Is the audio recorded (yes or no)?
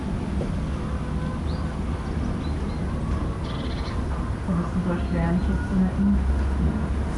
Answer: yes